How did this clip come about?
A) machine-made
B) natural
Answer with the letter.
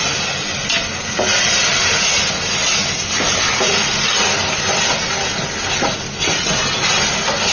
B